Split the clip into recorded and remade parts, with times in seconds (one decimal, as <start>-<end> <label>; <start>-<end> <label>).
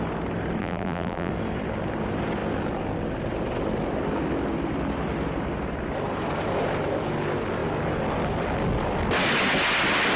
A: 0.0-0.6 recorded; 0.6-1.3 remade; 1.3-10.2 recorded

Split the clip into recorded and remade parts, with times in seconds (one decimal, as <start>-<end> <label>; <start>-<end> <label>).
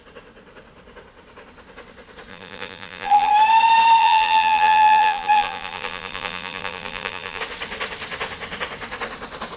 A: 0.0-2.3 recorded; 2.3-3.3 remade; 3.3-4.0 recorded; 4.0-7.4 remade; 7.4-9.6 recorded